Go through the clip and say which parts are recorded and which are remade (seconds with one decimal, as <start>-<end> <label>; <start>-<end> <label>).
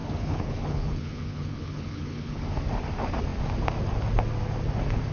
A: 0.0-2.4 remade; 2.4-5.1 recorded